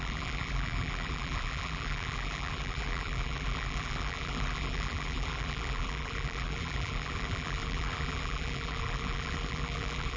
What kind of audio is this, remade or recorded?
remade